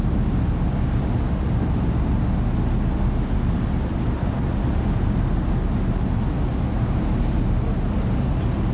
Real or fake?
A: real